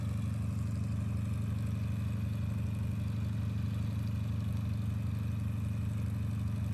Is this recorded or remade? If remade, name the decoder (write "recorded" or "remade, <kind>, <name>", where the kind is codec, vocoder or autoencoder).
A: recorded